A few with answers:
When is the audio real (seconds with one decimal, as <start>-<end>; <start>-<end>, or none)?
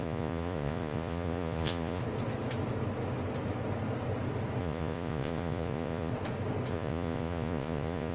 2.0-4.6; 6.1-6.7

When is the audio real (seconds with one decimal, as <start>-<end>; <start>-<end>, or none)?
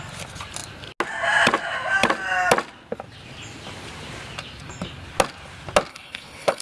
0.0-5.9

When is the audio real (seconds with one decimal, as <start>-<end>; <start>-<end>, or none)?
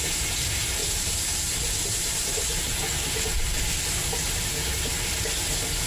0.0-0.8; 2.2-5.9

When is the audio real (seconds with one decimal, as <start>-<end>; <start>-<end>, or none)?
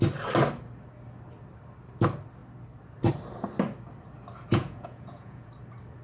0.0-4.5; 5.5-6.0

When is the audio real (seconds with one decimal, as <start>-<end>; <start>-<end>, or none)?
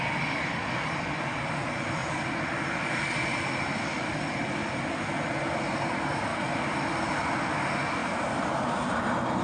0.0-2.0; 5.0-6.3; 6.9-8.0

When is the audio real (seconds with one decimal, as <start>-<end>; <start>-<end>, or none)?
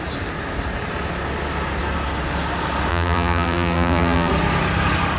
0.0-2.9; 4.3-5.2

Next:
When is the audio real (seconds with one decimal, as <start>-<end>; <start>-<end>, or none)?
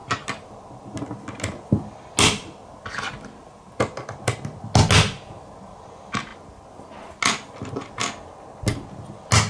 0.0-9.5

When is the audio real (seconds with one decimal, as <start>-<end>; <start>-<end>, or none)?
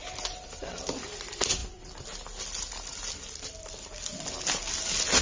0.0-5.2